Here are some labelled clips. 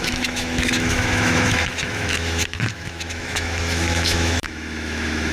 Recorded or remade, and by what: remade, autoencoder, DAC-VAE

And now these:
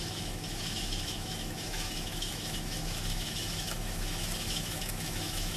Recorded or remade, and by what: remade, autoencoder, DAC-VAE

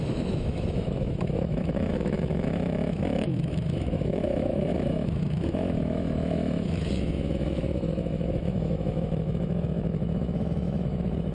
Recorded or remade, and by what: remade, autoencoder, DAC-VAE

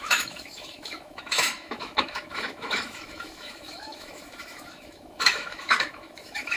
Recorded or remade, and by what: remade, autoencoder, DAC-VAE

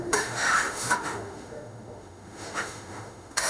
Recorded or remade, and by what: remade, autoencoder, DAC-VAE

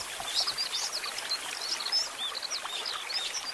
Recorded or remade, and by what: recorded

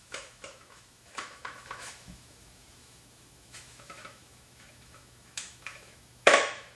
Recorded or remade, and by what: remade, autoencoder, DAC-VAE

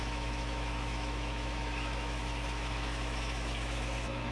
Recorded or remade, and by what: remade, autoencoder, DAC-VAE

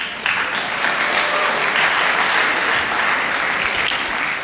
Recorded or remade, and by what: recorded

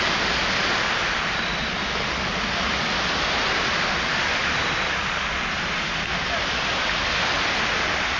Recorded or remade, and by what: recorded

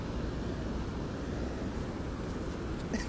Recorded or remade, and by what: recorded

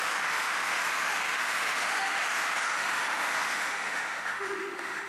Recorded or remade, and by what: remade, autoencoder, DAC-VAE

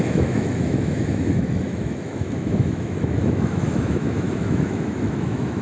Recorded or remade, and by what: remade, autoencoder, DAC-VAE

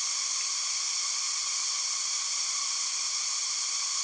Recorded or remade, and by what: recorded